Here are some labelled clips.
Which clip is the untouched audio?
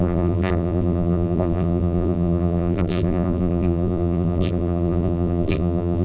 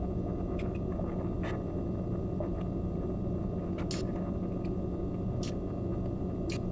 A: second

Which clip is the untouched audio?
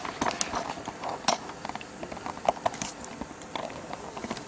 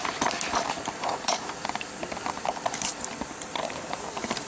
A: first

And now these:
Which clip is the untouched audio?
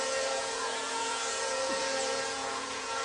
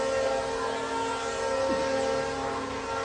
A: second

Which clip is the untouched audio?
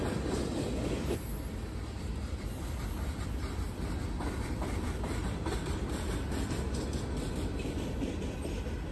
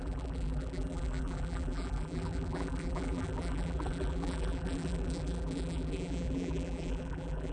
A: first